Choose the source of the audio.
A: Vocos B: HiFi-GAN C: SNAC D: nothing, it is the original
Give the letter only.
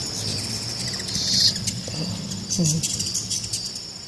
D